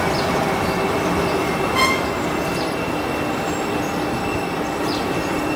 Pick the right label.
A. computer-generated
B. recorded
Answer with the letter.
B